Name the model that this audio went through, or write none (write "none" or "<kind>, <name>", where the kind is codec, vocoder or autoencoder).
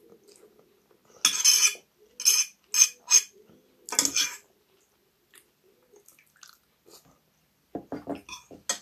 none